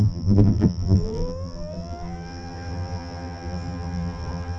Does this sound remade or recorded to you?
remade